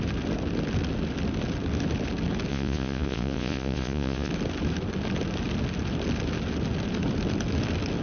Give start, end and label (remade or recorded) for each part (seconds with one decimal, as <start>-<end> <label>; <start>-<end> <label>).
0.0-2.5 recorded; 2.5-4.3 remade; 4.3-8.0 recorded